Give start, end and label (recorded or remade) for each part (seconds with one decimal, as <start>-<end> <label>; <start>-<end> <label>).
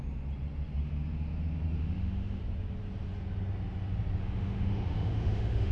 0.0-1.8 recorded; 1.8-2.4 remade; 2.4-4.2 recorded; 4.2-5.7 remade